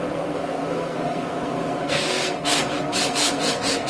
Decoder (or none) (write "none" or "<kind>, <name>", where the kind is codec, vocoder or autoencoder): codec, SNAC